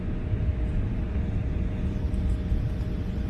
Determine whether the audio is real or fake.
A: real